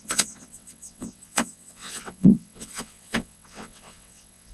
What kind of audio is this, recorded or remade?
remade